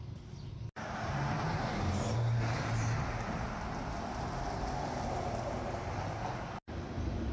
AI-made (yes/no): no